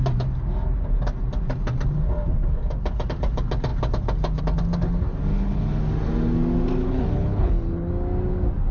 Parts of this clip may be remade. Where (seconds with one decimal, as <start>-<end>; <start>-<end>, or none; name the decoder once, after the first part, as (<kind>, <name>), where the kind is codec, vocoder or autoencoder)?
5.3-5.8 (codec, HILCodec); 6.8-7.9